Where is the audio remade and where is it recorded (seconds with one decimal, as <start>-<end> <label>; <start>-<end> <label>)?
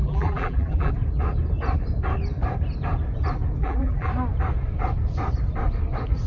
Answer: 0.0-0.9 remade; 0.9-3.6 recorded; 3.6-4.1 remade; 4.1-6.3 recorded